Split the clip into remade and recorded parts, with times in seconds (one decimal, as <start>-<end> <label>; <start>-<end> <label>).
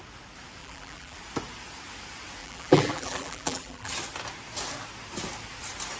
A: 0.0-0.6 recorded; 0.6-1.2 remade; 1.2-2.4 recorded; 2.4-3.9 remade; 3.9-6.0 recorded